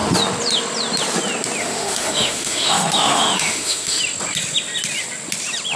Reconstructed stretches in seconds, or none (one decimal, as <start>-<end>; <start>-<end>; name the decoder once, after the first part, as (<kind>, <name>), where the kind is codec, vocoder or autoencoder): 1.6-4.0 (autoencoder, DAC-VAE)